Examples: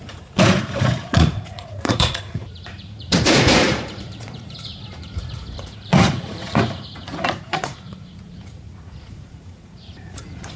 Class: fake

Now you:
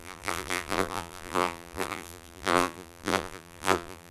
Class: fake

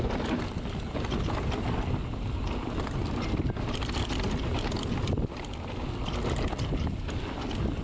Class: real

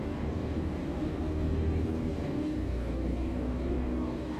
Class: fake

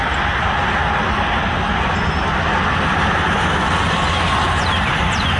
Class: real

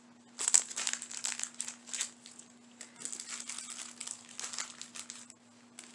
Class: real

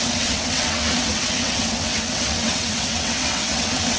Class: fake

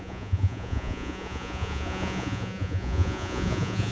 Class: fake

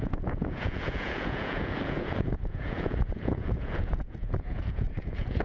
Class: fake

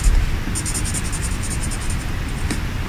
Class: real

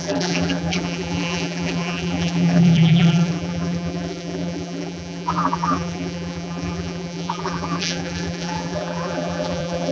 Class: fake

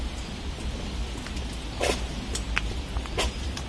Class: real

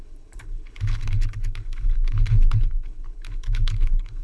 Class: fake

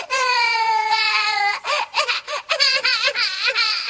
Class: fake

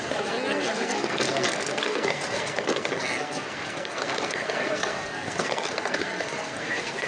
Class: fake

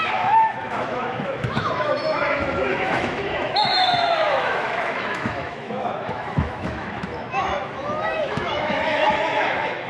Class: fake